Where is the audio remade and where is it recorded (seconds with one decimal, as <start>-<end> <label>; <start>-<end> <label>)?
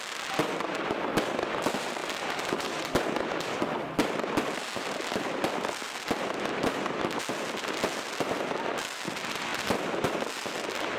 0.0-11.0 recorded